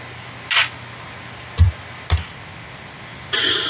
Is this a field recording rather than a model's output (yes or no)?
yes